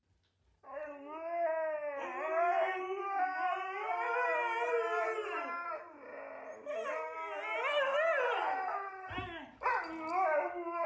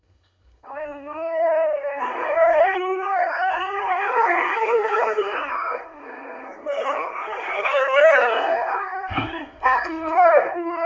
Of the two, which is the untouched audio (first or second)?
first